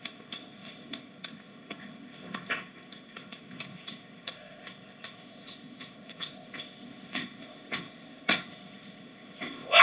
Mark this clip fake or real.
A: fake